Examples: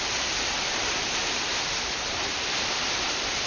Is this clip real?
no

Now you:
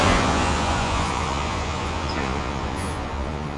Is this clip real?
no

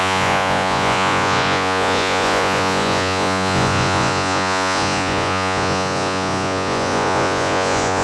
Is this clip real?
no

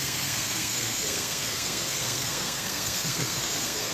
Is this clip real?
no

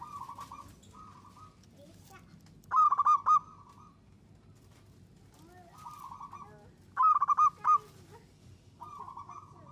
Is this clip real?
yes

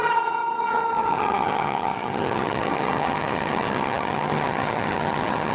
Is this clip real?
no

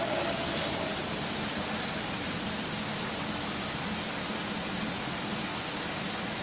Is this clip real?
yes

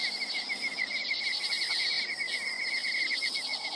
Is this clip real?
yes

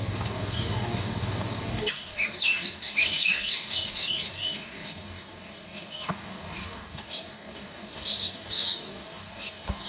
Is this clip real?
no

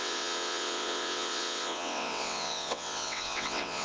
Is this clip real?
no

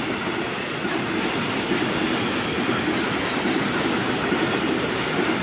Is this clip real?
yes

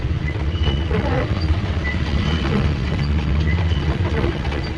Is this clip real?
no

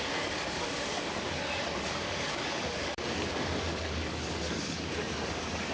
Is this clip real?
no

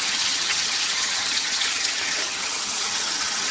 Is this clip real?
no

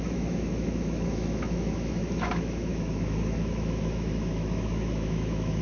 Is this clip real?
no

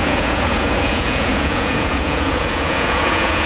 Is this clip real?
no